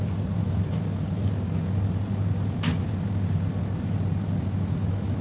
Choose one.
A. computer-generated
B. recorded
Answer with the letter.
B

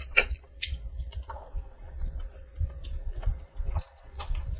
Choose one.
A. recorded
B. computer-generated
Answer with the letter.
B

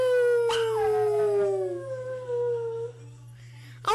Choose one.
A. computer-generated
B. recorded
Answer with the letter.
B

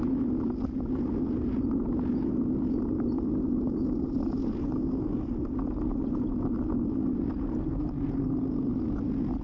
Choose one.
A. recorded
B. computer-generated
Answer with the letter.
A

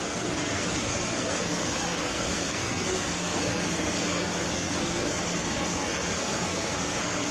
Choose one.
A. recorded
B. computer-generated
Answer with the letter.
B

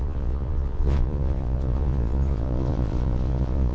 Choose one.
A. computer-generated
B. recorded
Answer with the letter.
A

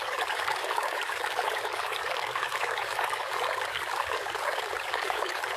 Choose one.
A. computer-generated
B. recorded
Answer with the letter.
A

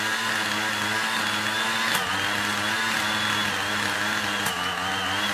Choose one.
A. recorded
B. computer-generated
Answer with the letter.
A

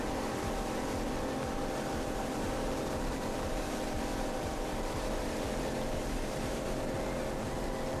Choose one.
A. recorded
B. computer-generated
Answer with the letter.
B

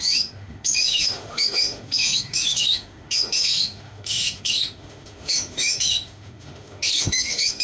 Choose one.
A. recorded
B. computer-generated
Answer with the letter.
B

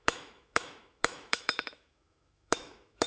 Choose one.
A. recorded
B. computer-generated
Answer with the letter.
B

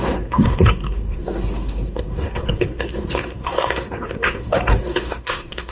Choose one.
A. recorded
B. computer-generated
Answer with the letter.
B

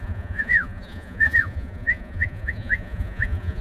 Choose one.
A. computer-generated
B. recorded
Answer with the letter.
A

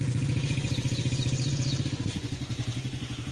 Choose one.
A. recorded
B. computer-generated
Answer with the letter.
B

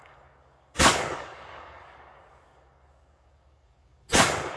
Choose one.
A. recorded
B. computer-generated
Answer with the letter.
B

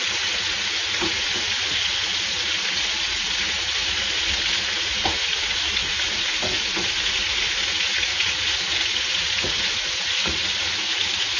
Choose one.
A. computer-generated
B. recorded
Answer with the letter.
A